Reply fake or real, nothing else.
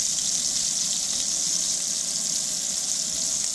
real